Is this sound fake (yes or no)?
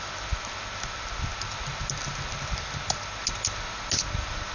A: no